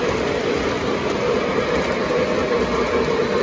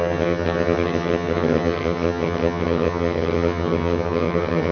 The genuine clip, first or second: first